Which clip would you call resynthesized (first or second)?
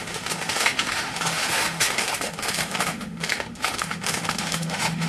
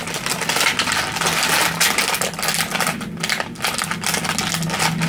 first